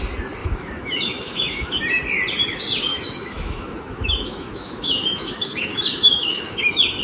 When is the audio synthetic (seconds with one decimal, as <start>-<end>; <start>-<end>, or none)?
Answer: 0.4-1.8; 2.9-7.0